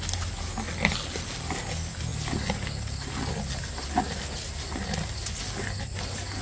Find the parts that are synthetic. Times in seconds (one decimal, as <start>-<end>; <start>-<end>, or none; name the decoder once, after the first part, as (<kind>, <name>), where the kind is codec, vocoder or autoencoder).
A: none